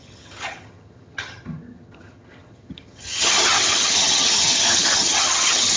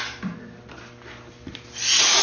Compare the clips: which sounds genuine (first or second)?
second